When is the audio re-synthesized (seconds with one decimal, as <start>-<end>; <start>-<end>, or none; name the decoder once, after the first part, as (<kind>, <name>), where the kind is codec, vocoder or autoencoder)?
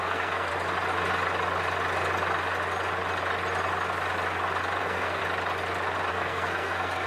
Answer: 0.0-0.5 (codec, SNAC); 4.8-5.2; 6.1-7.1